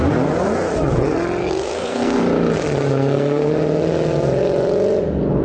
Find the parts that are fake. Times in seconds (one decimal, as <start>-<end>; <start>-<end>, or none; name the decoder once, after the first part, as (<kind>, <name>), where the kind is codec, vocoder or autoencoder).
1.4-2.2 (codec, SNAC); 2.9-3.5